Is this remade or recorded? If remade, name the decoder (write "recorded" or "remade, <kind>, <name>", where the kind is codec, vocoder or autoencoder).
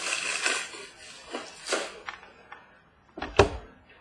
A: recorded